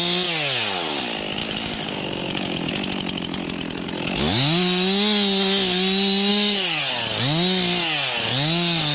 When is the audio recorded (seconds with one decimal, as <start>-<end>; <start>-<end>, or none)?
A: 0.0-1.4; 2.7-6.3; 6.8-8.9